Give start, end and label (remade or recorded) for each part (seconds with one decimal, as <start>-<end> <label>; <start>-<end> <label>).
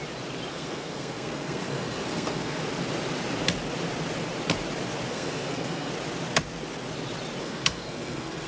0.0-0.5 recorded; 0.5-2.6 remade; 2.6-5.1 recorded; 5.1-5.9 remade; 5.9-7.4 recorded; 7.4-8.5 remade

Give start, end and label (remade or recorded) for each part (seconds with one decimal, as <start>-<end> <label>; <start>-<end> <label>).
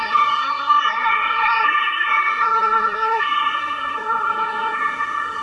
0.0-5.4 remade